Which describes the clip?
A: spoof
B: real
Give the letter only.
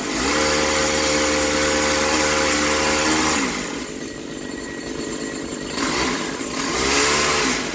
B